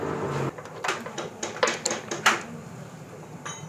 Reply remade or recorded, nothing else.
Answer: recorded